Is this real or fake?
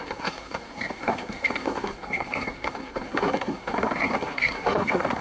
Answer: fake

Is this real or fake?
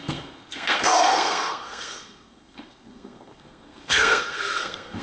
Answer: fake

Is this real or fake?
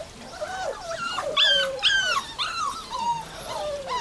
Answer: real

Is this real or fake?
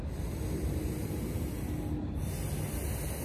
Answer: real